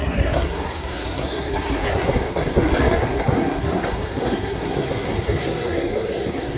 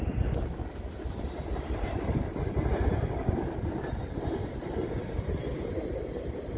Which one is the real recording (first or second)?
second